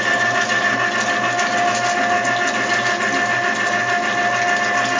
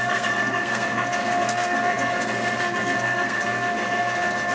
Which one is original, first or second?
first